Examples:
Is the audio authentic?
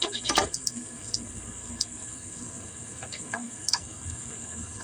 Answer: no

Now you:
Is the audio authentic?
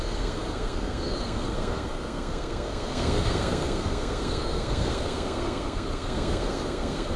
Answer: no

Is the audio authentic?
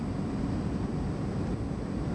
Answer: yes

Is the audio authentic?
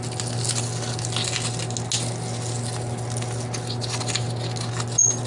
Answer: yes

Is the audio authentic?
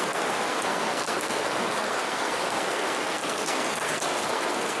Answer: no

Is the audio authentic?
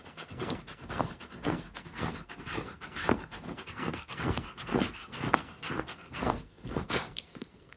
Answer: no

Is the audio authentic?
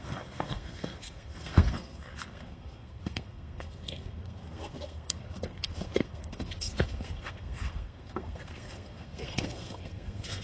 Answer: no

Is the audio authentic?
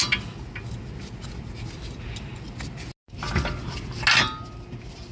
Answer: yes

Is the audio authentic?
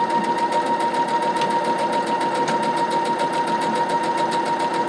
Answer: yes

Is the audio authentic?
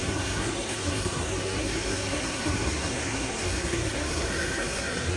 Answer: no